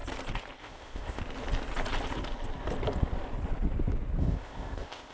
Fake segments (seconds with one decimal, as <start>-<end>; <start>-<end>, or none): 0.6-1.2; 4.2-5.1